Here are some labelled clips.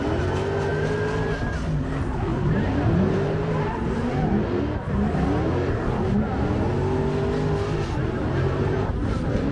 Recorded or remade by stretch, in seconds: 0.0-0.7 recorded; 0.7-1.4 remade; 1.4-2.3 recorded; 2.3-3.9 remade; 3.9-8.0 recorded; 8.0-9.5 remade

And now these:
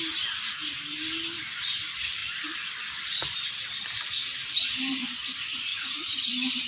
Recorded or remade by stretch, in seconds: 0.0-5.7 recorded; 5.7-6.3 remade; 6.3-6.7 recorded